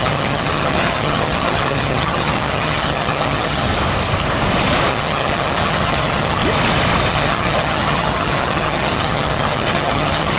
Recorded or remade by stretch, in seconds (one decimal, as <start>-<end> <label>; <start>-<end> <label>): 0.0-3.7 remade; 3.7-4.9 recorded; 4.9-6.4 remade; 6.4-7.1 recorded; 7.1-10.4 remade